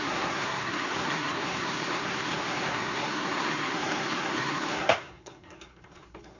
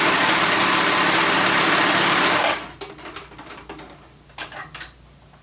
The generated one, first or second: first